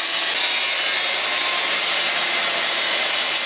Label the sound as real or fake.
real